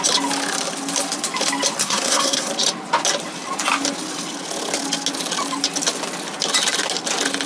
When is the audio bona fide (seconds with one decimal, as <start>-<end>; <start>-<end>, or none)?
0.0-1.8; 2.5-7.5